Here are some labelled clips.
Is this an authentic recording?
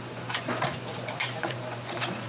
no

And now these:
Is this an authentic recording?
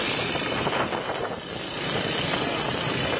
yes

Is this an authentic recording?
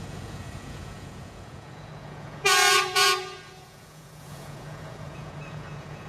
no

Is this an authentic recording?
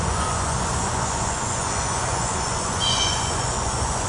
no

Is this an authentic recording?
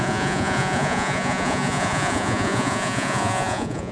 no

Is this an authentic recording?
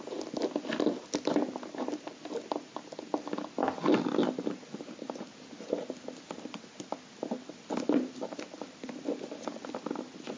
yes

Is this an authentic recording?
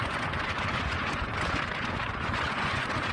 no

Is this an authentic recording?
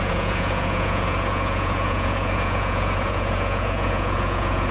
no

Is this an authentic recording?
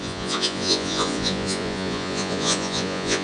no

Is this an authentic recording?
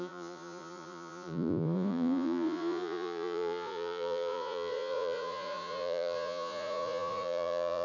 no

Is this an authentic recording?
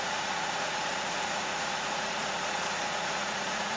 no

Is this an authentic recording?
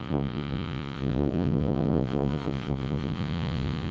no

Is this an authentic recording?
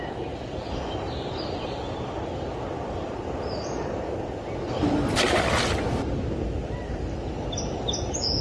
yes